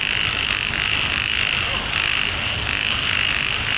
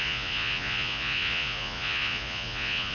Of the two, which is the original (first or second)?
first